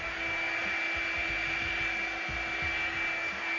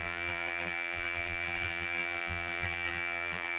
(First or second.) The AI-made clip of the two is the second